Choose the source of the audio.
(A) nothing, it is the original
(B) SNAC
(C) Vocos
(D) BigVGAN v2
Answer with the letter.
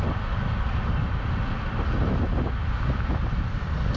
A